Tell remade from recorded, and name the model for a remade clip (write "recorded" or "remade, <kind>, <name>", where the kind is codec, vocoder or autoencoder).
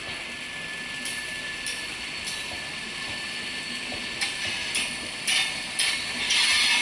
recorded